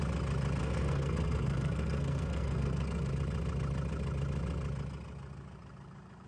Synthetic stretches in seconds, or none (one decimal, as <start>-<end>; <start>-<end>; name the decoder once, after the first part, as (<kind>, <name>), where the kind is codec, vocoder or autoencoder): 0.6-3.1 (codec, SNAC)